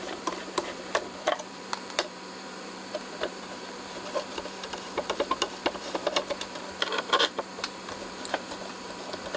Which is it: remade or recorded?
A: remade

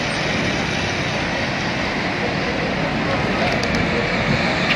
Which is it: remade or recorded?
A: recorded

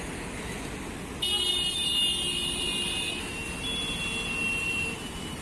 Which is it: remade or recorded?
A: recorded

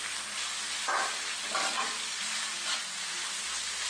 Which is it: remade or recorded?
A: recorded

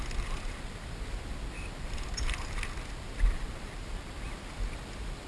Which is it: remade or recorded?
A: recorded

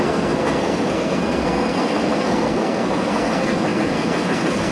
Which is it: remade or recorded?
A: remade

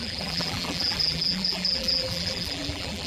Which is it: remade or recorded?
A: remade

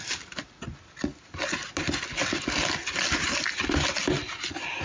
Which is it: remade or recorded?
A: recorded